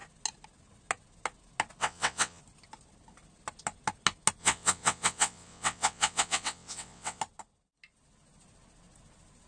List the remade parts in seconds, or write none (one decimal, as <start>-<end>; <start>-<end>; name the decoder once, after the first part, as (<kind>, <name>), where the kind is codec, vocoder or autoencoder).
1.8-2.4 (vocoder, WaveNeXt); 4.4-7.2